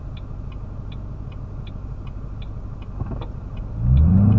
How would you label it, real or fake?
real